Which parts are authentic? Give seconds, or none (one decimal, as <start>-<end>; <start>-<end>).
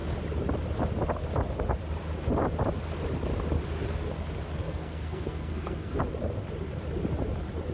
0.0-4.6; 6.0-7.7